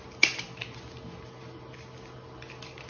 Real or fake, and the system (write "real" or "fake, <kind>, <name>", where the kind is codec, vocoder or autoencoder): real